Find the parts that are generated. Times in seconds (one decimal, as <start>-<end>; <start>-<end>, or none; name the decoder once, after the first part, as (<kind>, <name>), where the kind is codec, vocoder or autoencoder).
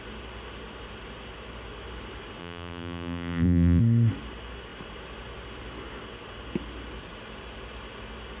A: 2.4-3.8 (vocoder, BigVGAN v2)